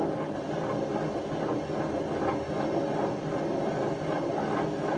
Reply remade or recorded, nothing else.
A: recorded